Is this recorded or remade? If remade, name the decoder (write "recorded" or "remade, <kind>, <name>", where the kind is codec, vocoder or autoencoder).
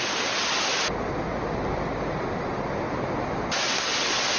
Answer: recorded